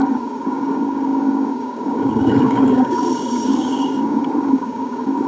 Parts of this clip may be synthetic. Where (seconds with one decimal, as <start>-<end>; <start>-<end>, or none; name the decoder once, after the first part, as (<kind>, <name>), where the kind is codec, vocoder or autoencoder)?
0.0-5.3 (codec, DAC)